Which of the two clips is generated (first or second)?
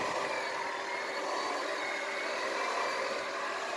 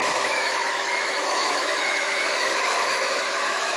second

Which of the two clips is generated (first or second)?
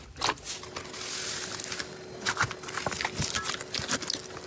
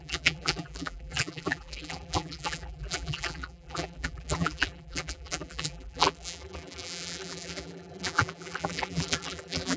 second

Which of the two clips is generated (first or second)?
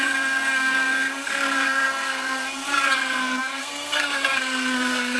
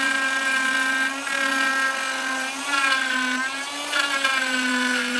first